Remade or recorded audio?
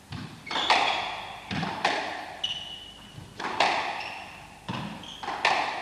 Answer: recorded